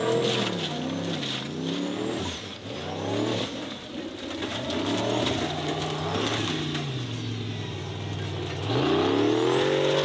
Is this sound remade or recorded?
recorded